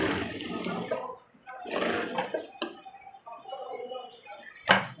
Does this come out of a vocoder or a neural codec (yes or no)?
no